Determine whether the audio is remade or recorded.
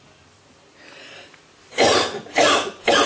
recorded